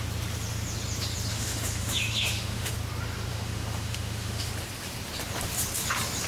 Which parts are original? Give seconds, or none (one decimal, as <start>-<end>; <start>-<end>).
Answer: 0.0-1.3; 2.7-3.3; 4.5-6.3